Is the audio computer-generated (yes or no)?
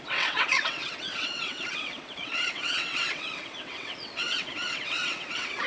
yes